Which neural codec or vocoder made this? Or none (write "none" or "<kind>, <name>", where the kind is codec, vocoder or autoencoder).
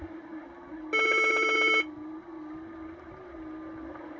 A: none